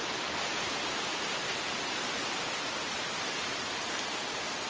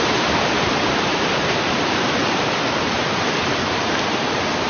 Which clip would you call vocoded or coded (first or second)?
second